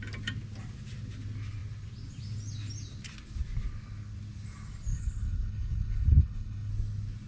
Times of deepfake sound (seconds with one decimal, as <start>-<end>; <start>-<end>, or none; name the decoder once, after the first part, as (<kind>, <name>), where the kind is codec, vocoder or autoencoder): 4.9-6.7 (codec, HILCodec)